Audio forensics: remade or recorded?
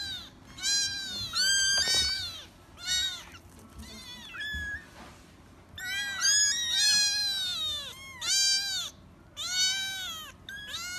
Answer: recorded